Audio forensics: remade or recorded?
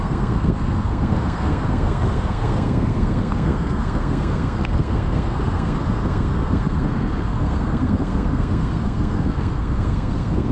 remade